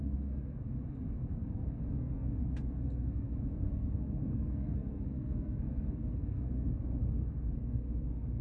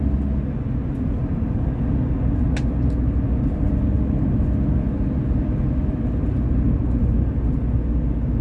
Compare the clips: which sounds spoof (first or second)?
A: first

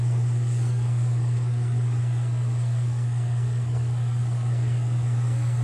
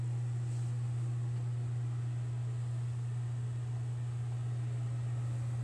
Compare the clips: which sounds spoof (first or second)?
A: first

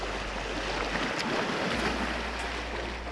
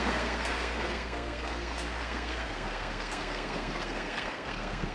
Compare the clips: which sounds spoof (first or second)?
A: second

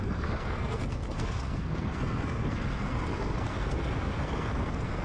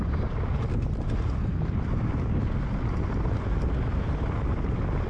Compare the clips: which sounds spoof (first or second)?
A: first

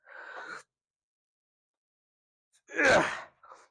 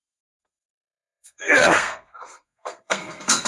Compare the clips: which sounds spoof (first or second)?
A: second